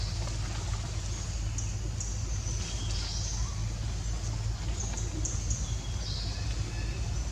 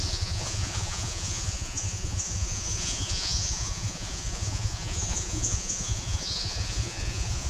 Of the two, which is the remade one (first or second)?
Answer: second